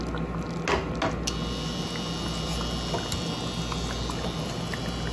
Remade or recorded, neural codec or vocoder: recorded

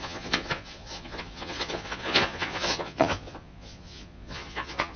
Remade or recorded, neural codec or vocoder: remade, vocoder, Vocos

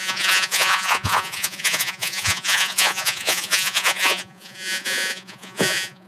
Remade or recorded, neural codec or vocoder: remade, vocoder, Vocos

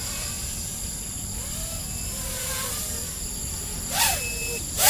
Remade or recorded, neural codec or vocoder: recorded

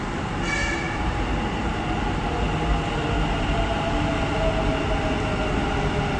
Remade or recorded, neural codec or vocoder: recorded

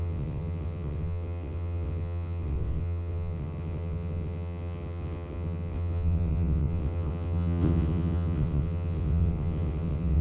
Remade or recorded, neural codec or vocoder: remade, vocoder, WaveNeXt